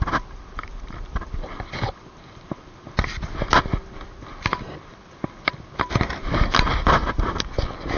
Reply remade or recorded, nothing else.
recorded